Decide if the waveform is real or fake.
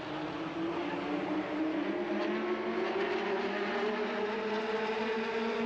real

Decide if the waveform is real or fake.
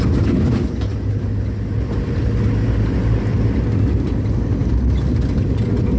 real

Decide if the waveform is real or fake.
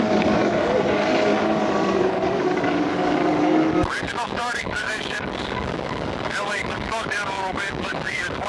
fake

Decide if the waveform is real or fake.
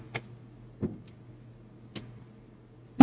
real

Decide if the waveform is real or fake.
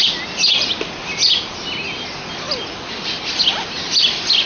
real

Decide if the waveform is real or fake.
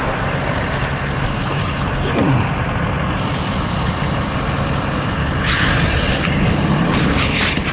real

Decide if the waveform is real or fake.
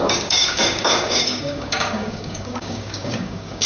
fake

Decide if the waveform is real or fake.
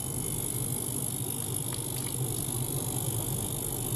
real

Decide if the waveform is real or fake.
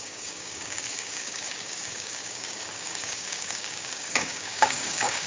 fake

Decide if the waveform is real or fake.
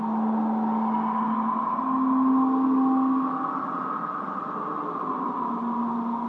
real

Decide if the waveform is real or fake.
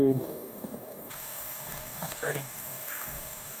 fake